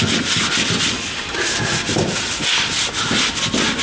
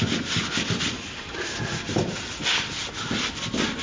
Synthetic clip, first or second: second